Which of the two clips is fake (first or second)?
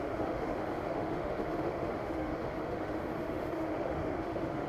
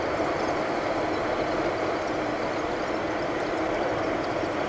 first